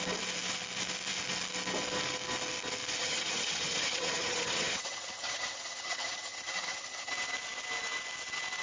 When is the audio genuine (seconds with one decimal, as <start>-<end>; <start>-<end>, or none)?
0.0-3.0; 7.1-8.6